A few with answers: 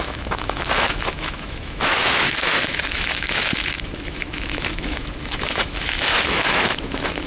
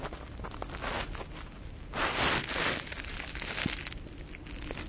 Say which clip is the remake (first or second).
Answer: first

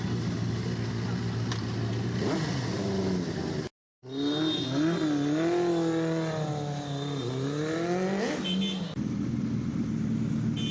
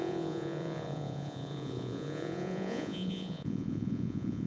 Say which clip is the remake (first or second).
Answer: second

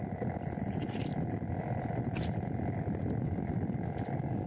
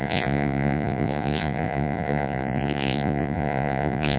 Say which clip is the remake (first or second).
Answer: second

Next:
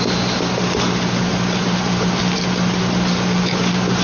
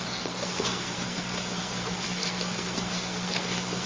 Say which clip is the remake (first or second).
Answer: second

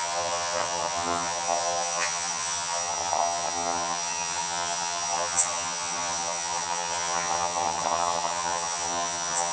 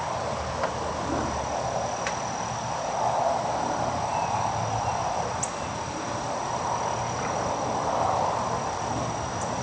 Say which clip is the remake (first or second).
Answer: first